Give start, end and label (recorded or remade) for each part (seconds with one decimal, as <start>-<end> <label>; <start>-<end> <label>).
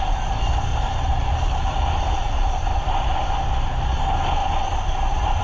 0.0-0.7 recorded; 0.7-2.8 remade; 2.8-5.4 recorded